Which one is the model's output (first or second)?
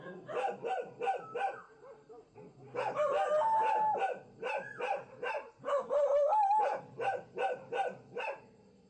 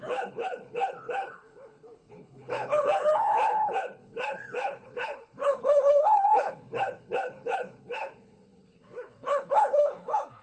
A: second